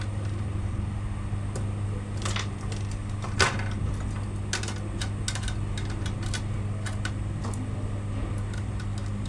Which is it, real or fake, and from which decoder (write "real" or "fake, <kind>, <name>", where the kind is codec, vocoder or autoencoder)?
real